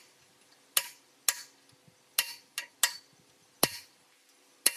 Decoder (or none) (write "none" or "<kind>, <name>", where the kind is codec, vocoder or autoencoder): none